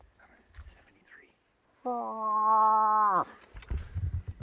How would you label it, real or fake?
real